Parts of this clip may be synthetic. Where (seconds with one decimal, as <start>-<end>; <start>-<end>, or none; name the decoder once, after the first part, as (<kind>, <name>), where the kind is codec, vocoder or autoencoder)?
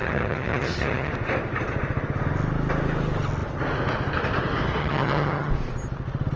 0.0-1.1 (vocoder, HiFi-GAN); 4.8-5.5